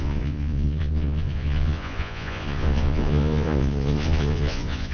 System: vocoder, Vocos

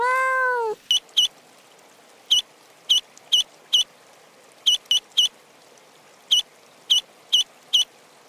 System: none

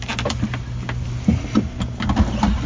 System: none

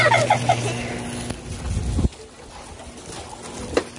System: none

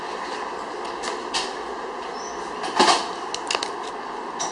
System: none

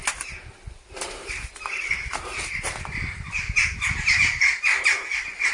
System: none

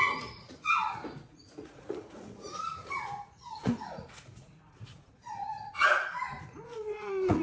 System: vocoder, Vocos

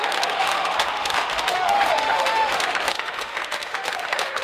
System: autoencoder, DAC-VAE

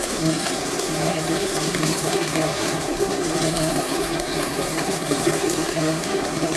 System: codec, SNAC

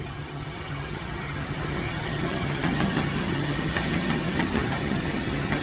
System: vocoder, HiFi-GAN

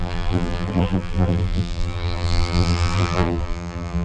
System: vocoder, BigVGAN v2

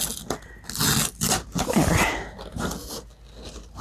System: none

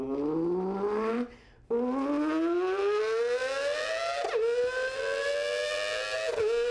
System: none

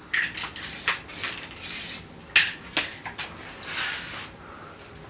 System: none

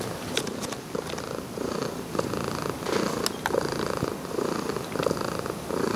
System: none